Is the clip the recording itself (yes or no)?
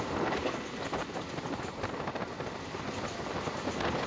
yes